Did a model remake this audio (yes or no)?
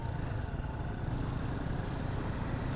no